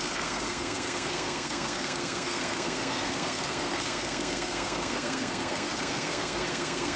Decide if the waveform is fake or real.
fake